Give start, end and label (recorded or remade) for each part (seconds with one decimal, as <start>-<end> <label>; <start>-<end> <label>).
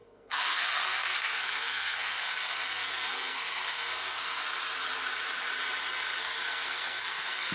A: 0.0-4.4 remade; 4.4-6.2 recorded; 6.2-7.5 remade